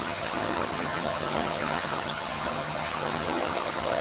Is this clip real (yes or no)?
no